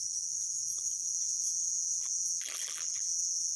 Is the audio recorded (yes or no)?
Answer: no